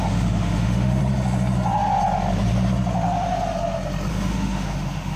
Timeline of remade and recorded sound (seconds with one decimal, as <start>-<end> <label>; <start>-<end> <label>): 0.0-1.0 remade; 1.0-4.1 recorded; 4.1-5.2 remade